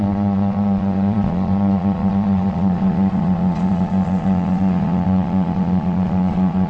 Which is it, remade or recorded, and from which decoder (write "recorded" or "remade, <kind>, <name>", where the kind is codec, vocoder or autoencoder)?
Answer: remade, vocoder, Vocos